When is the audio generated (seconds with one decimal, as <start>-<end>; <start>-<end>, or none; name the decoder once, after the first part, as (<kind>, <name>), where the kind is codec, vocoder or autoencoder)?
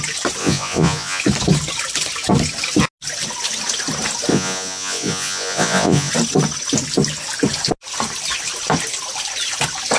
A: 0.4-1.2 (vocoder, Vocos); 4.3-6.1